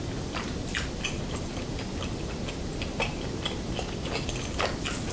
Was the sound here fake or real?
real